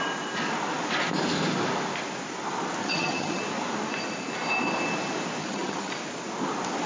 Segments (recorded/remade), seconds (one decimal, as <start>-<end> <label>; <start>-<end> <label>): 0.0-2.8 recorded; 2.8-3.4 remade; 3.4-5.4 recorded; 5.4-5.9 remade; 5.9-6.9 recorded